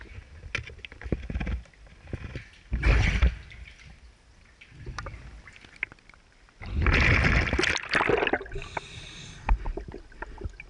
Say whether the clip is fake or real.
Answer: real